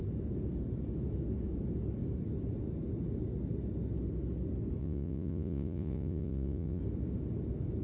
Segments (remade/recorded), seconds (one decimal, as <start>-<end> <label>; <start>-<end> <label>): 0.0-4.8 recorded; 4.8-6.8 remade; 6.8-7.8 recorded